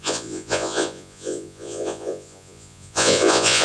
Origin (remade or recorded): remade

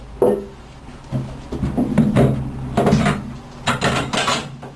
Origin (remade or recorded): recorded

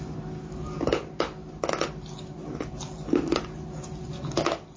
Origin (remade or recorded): recorded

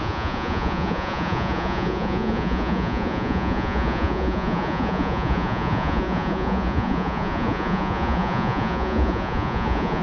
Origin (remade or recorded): remade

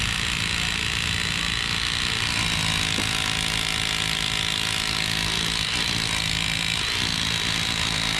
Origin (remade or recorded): recorded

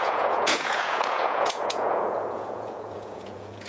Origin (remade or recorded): remade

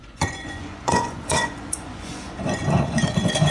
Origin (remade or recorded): remade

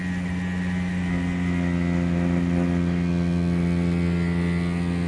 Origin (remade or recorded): recorded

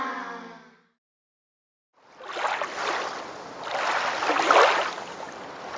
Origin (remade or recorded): recorded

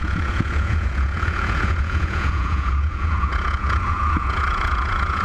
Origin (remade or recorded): remade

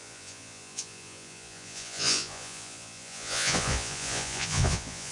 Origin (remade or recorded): remade